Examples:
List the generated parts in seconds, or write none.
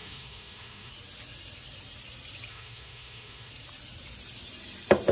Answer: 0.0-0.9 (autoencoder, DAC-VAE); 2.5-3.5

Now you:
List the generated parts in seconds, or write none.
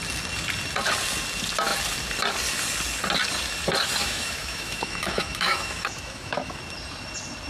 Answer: 4.0-6.6 (autoencoder, DAC-VAE)